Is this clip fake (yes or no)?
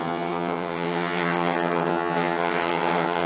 yes